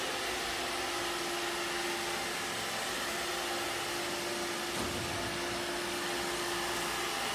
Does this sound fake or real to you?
real